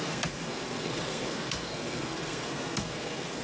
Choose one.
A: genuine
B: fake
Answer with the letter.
B